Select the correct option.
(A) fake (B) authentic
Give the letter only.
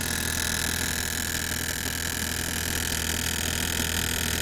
B